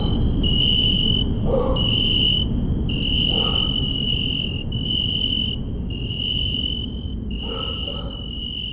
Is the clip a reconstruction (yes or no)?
yes